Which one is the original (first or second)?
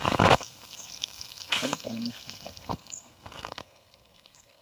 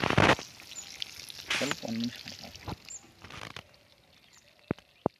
second